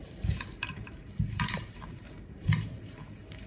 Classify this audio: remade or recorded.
remade